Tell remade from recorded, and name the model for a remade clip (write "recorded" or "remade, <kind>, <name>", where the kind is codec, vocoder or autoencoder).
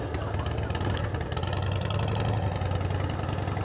recorded